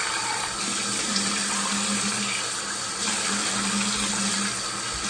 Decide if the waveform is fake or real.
real